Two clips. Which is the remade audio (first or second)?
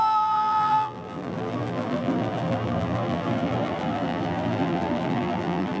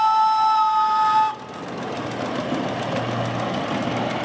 first